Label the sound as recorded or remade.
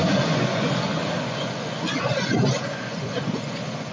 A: remade